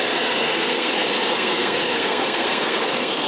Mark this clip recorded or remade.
remade